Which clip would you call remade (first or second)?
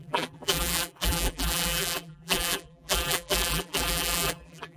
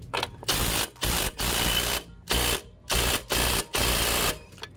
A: first